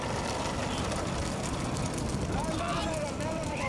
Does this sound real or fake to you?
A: real